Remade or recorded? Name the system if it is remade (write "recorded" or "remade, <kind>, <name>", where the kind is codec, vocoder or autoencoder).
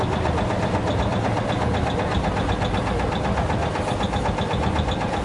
recorded